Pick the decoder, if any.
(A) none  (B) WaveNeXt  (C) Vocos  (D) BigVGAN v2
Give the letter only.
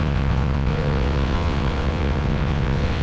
B